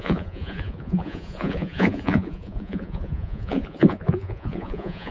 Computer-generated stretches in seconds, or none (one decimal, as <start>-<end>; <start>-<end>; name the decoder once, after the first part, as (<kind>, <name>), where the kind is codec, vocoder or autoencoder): 0.0-5.1 (vocoder, Vocos)